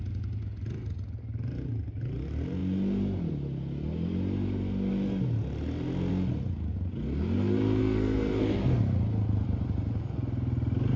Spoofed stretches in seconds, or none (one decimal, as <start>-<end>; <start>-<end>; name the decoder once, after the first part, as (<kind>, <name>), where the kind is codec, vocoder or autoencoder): 7.8-8.8 (codec, SNAC)